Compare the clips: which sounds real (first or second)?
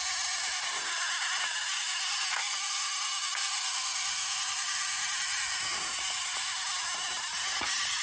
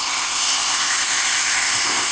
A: first